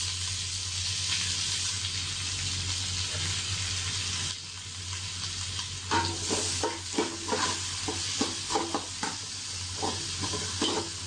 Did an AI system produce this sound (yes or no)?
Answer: no